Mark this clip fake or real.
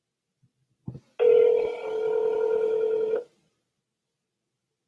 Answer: real